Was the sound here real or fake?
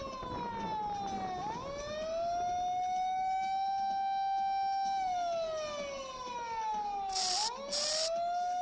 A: real